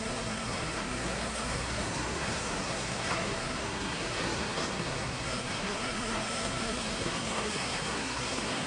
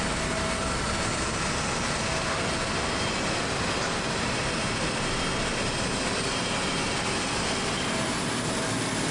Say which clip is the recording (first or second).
second